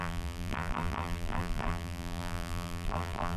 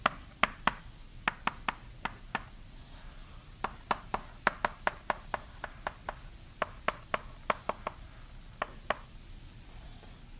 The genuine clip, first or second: second